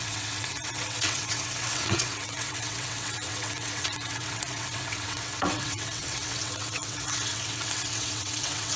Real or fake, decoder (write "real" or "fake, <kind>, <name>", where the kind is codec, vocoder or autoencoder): fake, vocoder, WaveNeXt